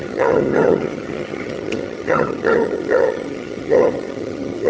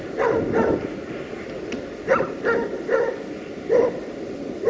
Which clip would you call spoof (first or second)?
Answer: first